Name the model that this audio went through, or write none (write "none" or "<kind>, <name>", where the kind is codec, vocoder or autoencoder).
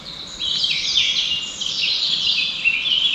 none